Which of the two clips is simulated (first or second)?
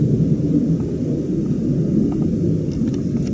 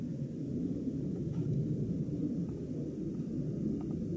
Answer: second